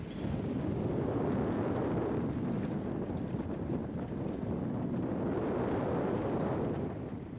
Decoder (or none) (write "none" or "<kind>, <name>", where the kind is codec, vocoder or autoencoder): none